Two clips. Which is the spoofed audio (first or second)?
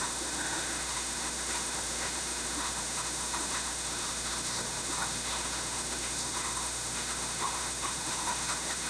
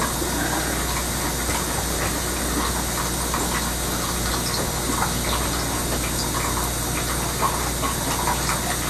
first